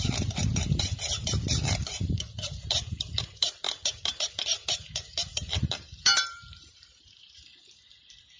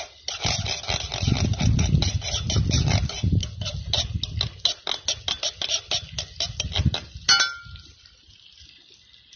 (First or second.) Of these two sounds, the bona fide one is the second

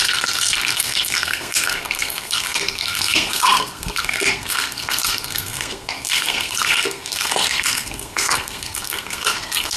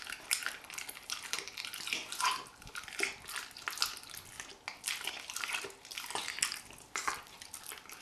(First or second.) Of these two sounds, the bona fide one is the second